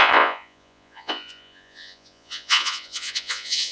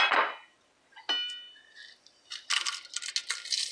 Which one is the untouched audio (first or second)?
second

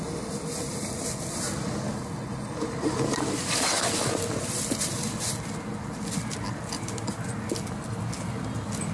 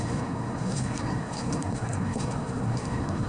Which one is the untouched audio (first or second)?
first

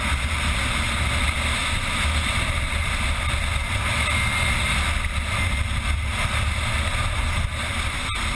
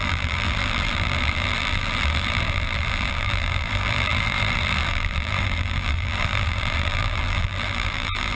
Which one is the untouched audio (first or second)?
first